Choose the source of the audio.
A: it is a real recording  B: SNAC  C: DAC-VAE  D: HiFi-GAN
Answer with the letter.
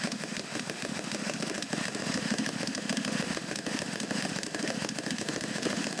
C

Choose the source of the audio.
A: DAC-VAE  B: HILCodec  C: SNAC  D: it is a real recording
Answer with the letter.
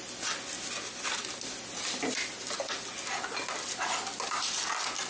D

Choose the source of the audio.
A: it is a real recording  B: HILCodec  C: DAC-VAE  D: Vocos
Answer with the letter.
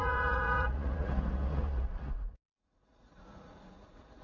D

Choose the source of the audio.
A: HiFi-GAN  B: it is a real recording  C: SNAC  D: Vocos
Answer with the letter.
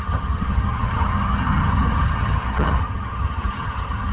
A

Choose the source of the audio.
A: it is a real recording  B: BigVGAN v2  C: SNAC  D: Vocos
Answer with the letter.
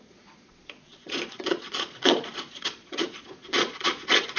D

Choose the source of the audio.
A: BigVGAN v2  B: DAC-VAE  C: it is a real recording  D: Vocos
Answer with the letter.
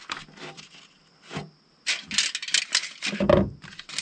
C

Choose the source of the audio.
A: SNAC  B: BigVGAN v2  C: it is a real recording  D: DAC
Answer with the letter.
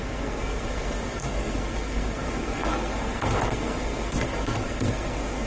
A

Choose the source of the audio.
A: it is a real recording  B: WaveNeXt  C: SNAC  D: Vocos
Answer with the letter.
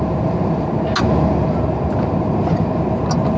A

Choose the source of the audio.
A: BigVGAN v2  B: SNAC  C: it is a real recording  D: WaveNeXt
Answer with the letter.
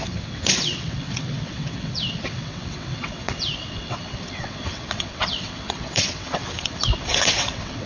D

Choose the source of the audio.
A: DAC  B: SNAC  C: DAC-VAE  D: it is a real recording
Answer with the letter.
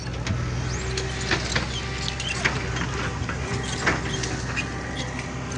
D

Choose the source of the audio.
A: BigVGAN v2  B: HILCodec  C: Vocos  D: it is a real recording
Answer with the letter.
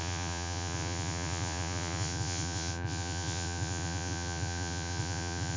C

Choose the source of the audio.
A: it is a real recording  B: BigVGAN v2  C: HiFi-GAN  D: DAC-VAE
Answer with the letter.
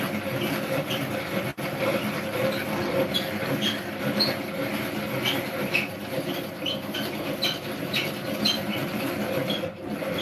A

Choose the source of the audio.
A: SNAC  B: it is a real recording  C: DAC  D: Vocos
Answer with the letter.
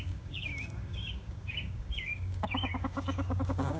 C